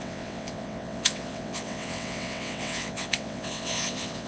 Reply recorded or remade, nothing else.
remade